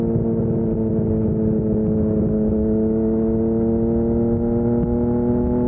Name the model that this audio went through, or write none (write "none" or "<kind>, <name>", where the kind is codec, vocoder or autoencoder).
none